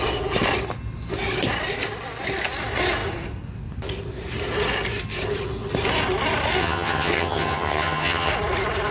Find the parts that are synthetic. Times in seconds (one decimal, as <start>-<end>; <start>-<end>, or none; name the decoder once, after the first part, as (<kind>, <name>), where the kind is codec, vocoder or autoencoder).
6.6-8.3 (vocoder, HiFi-GAN)